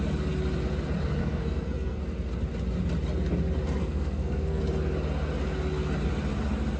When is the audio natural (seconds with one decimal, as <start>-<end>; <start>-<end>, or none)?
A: 0.0-1.2; 2.0-3.8; 4.6-6.8